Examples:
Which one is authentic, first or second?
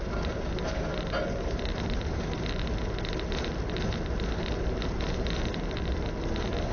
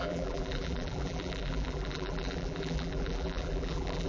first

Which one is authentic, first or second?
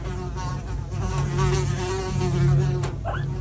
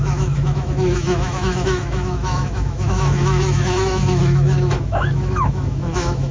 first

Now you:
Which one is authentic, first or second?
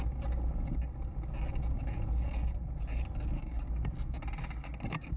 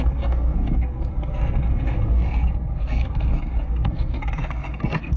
first